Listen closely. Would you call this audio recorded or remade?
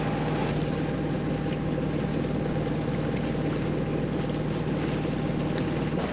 recorded